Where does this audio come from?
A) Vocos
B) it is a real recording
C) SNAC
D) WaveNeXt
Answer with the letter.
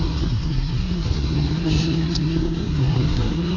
C